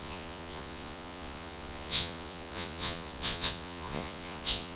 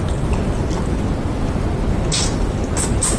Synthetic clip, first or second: first